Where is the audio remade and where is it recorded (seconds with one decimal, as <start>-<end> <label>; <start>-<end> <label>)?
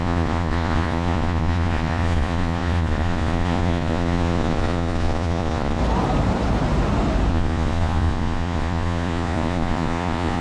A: 0.0-5.8 remade; 5.8-7.3 recorded; 7.3-10.4 remade